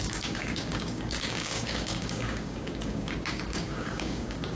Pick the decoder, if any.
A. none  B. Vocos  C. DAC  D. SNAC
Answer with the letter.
C